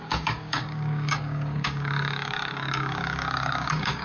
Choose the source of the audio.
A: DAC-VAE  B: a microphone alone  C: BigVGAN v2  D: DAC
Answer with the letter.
D